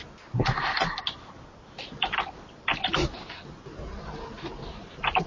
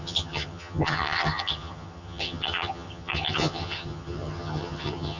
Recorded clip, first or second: first